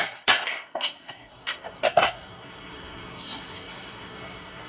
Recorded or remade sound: remade